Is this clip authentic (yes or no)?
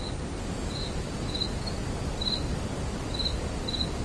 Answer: yes